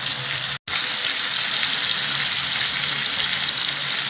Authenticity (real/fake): real